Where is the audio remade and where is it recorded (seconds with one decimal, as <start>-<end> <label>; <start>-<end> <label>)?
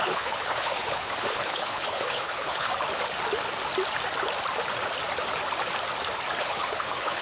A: 0.0-2.7 remade; 2.7-6.4 recorded; 6.4-7.2 remade